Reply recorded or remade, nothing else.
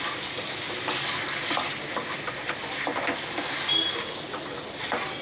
recorded